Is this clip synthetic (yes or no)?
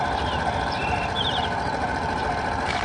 yes